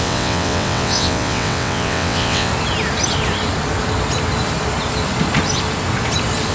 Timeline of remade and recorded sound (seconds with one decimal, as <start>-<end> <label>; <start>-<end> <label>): 0.0-2.5 remade; 2.5-6.5 recorded